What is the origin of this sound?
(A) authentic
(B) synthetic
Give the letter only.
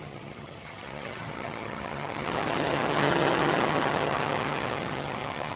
B